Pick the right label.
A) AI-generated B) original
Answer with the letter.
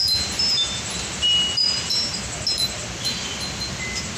B